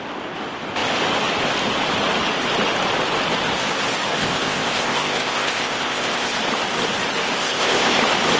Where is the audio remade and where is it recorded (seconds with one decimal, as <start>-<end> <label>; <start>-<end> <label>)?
0.0-4.2 recorded; 4.2-6.4 remade; 6.4-7.4 recorded; 7.4-8.0 remade; 8.0-8.4 recorded